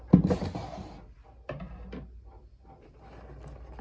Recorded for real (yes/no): yes